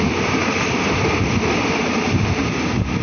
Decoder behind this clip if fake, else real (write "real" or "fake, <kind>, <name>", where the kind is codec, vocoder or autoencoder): real